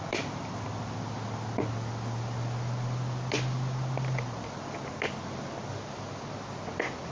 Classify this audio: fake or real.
real